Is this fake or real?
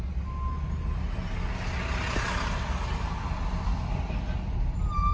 real